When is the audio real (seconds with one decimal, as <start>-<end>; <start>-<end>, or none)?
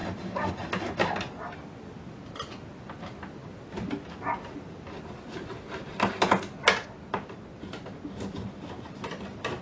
0.0-9.6